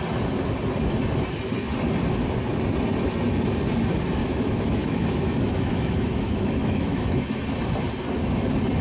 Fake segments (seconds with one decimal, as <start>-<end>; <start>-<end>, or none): 4.2-7.4